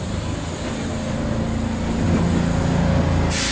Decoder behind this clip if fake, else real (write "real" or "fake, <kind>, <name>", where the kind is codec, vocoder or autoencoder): real